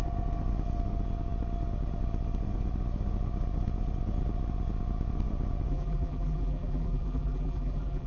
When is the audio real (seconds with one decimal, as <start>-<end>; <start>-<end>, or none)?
0.0-5.7